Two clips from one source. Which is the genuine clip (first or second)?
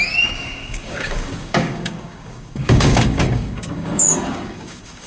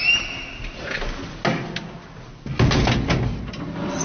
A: second